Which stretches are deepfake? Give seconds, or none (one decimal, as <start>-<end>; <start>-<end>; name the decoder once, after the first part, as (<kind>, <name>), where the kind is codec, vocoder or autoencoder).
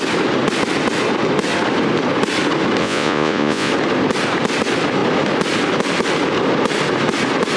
2.8-3.7 (vocoder, Vocos)